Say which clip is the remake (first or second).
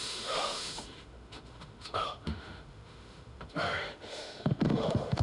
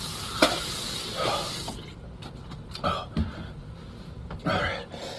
first